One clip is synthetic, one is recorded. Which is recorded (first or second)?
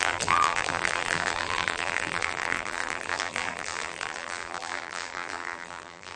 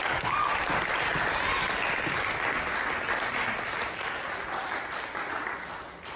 second